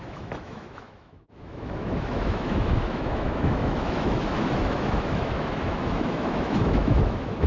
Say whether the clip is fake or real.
fake